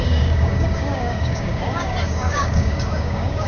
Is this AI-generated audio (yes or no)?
yes